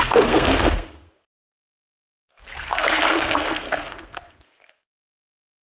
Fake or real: fake